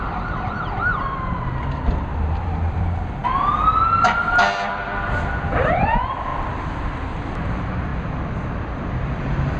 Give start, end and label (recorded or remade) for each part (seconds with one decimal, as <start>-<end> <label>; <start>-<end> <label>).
0.0-3.2 remade; 3.2-4.3 recorded; 4.3-9.6 remade

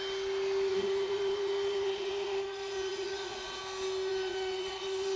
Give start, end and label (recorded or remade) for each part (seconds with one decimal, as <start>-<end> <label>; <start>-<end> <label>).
0.0-0.7 recorded; 0.7-3.6 remade; 3.6-4.1 recorded; 4.1-5.2 remade

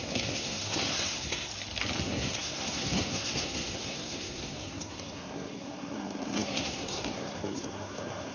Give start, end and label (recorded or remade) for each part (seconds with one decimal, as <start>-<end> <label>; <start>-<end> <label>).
0.0-1.5 remade; 1.5-2.0 recorded; 2.0-8.3 remade

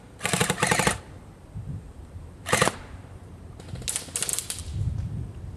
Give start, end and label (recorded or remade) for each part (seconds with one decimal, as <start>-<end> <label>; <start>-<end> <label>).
0.0-0.4 recorded; 0.4-3.5 remade; 3.5-5.6 recorded